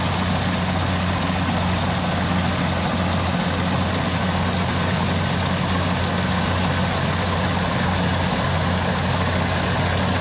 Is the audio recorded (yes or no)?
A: yes